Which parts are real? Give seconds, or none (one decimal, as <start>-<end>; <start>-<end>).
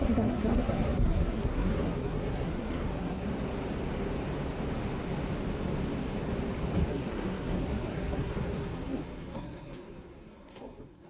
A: 3.3-6.9